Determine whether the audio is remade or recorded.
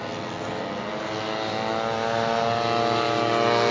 recorded